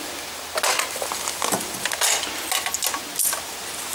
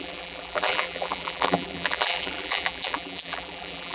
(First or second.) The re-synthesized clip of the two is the second